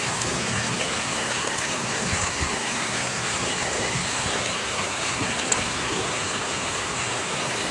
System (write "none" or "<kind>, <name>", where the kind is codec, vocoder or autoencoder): codec, SNAC